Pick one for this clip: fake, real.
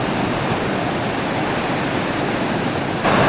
fake